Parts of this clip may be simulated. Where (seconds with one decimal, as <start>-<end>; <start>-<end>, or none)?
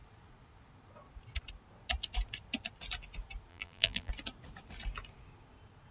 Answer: 3.5-4.1